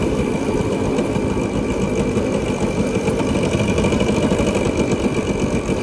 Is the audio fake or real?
real